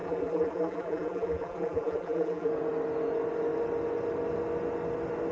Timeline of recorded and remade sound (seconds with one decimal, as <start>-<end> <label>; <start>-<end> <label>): 0.0-2.5 remade; 2.5-5.3 recorded